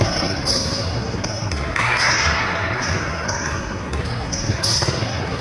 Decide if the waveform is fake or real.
fake